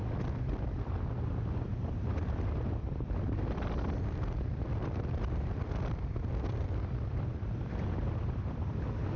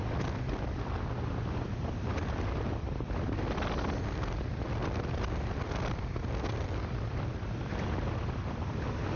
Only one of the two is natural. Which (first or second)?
second